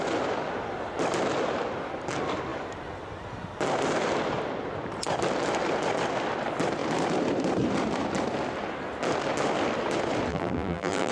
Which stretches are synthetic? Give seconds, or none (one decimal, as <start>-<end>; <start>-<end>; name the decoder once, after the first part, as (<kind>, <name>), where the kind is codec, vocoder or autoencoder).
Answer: 10.3-11.1 (vocoder, BigVGAN v2)